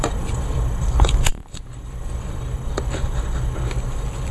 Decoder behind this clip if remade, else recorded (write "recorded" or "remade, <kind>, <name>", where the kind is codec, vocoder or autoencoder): remade, vocoder, BigVGAN v2